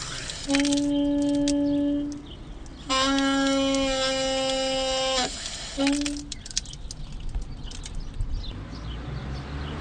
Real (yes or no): yes